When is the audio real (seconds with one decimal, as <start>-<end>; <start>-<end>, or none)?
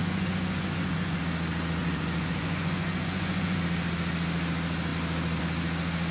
1.2-1.8; 3.6-6.1